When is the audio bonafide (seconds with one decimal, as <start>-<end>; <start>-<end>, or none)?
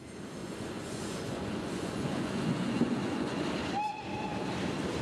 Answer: 0.0-0.4; 3.4-5.0